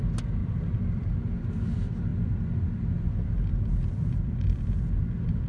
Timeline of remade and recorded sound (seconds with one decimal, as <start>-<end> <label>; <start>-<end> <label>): 0.0-0.4 recorded; 0.4-1.4 remade; 1.4-2.1 recorded; 2.1-5.0 remade; 5.0-5.5 recorded